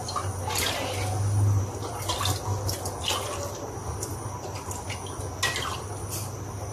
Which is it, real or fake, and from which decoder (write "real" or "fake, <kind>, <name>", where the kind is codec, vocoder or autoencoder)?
real